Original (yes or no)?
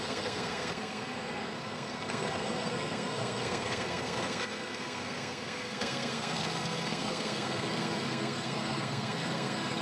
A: no